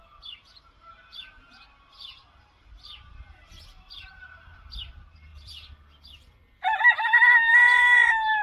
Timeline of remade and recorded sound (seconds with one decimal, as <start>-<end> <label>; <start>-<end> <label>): 0.0-5.3 remade; 5.3-7.5 recorded; 7.5-8.4 remade